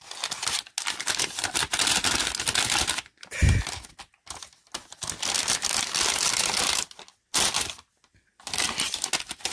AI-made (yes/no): no